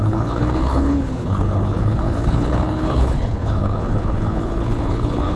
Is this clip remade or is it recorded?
remade